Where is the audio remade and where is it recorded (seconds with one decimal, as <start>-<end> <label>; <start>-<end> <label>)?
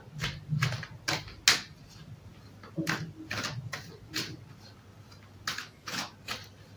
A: 0.0-5.6 recorded; 5.6-6.1 remade; 6.1-6.8 recorded